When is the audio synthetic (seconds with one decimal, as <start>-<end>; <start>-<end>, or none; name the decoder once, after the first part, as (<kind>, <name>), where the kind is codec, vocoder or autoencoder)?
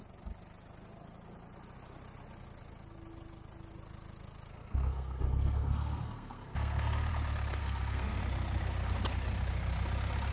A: 4.5-7.1 (codec, SNAC); 7.6-8.2